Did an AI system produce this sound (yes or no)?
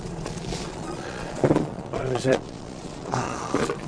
yes